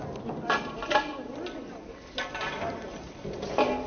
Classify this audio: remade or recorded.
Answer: recorded